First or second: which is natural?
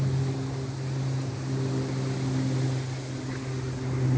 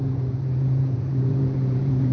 first